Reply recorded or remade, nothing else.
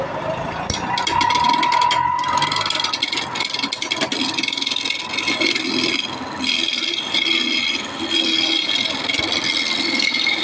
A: remade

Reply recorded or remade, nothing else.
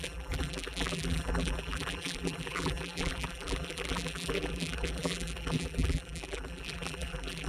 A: remade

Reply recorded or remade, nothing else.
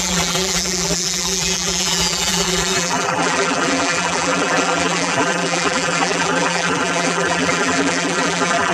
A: remade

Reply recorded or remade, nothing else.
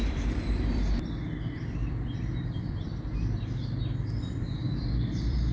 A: remade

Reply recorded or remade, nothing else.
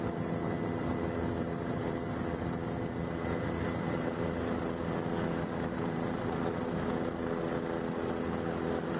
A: recorded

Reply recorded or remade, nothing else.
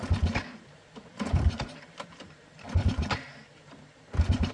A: remade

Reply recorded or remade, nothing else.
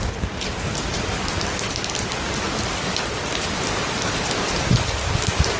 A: remade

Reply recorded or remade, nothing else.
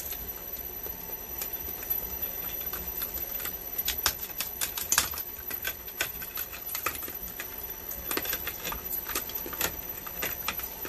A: remade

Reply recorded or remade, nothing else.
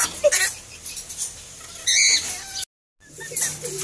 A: recorded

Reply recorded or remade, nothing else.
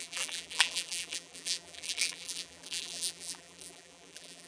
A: remade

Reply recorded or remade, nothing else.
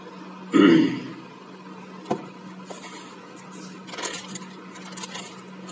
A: recorded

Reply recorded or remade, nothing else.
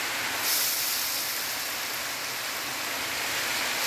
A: recorded